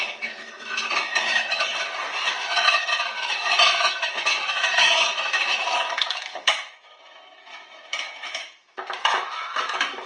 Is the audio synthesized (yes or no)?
yes